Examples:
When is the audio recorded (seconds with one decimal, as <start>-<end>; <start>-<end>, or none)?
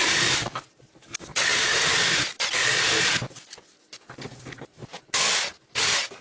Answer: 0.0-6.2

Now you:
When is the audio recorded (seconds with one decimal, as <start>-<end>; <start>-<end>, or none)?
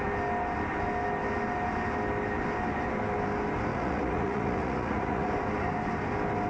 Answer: 0.0-3.7; 5.3-6.5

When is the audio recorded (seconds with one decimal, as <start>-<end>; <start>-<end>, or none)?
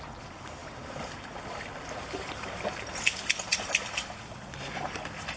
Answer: 0.0-5.4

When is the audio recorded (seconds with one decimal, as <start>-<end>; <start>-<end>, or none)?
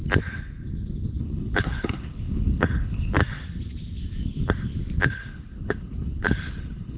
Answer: 0.0-1.2; 3.2-5.1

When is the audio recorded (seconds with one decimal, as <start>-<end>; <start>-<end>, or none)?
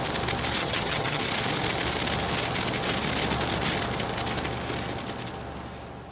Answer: 0.0-0.6; 1.2-6.1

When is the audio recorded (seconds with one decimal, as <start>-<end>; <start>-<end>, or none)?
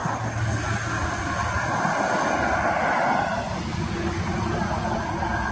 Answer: 0.0-5.5